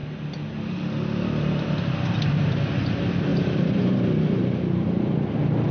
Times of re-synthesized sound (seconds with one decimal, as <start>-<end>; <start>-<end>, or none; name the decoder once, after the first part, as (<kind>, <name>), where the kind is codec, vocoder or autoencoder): 3.3-4.4 (vocoder, BigVGAN v2)